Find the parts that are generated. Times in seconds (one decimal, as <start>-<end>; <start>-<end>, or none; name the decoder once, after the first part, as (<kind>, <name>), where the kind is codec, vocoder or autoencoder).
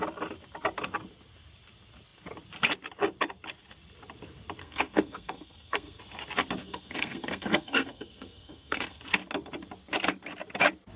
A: 4.6-6.0 (codec, SNAC); 6.6-9.0